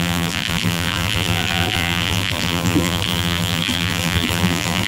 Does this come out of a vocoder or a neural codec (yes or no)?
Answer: yes